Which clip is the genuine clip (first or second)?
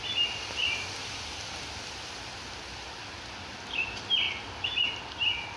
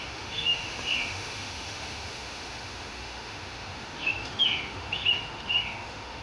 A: first